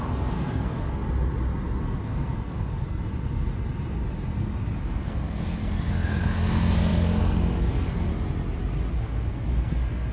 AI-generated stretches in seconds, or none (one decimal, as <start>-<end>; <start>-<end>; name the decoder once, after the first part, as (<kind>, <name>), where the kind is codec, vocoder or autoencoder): 0.0-1.0 (codec, SNAC); 1.8-3.0; 4.8-8.1; 8.9-10.1

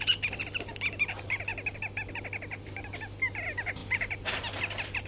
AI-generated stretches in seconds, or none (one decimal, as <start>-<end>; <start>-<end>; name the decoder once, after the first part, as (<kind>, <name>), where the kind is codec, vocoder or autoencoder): none

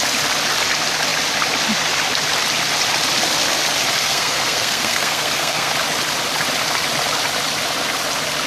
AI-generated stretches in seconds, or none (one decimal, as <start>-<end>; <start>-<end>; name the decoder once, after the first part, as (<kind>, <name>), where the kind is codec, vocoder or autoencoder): 4.0-5.7 (codec, SNAC)

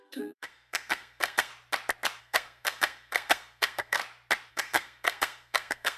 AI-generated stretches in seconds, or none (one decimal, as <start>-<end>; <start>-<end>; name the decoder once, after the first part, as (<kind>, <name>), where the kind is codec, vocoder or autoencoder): 0.0-1.5 (codec, SNAC); 2.2-4.0; 4.5-6.0